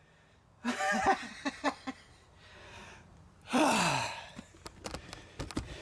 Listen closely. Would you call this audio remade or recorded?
recorded